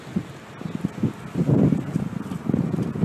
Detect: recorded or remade recorded